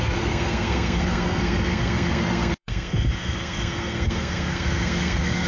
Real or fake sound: fake